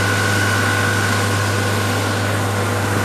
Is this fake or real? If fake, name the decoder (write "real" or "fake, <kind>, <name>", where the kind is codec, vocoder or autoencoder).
real